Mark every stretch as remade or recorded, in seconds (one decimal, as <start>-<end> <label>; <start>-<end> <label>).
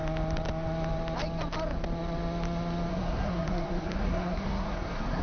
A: 0.0-2.9 recorded; 2.9-5.2 remade